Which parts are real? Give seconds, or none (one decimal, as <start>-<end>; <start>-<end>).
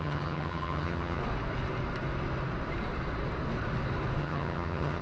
1.2-4.2